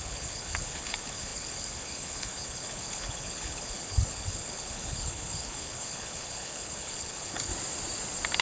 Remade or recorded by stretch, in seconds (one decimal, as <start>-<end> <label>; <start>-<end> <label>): 0.0-7.5 remade; 7.5-8.4 recorded

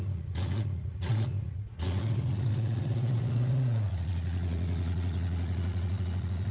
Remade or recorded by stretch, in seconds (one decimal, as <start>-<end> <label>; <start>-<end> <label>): 0.0-6.5 remade

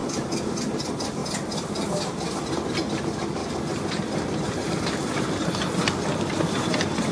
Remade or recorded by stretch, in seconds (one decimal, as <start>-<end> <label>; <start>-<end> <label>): 0.0-7.1 recorded

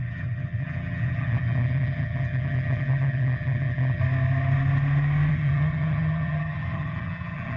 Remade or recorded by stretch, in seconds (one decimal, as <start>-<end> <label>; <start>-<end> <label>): 0.0-4.0 remade; 4.0-5.3 recorded; 5.3-7.6 remade